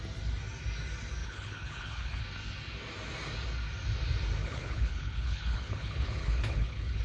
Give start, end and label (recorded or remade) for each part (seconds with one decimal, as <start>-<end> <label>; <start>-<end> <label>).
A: 0.0-1.2 recorded; 1.2-2.2 remade; 2.2-4.4 recorded; 4.4-7.0 remade